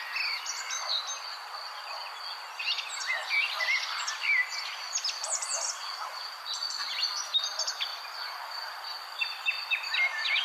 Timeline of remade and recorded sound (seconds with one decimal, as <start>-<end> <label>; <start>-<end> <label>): 0.0-7.9 recorded; 7.9-10.4 remade